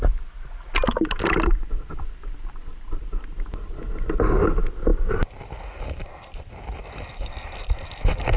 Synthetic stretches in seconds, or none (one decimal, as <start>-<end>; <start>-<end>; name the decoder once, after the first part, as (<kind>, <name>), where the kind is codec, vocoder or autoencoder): none

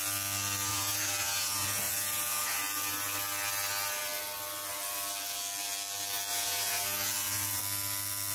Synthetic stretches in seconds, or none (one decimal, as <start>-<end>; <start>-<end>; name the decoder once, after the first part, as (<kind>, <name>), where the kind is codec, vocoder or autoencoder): 0.7-2.6 (vocoder, Vocos); 6.3-7.6

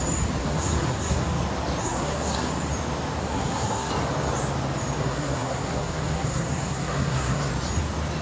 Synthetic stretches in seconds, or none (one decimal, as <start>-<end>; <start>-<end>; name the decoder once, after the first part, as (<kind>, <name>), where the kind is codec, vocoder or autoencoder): 0.4-1.2 (codec, SNAC); 1.8-2.5; 3.2-3.9; 5.0-7.5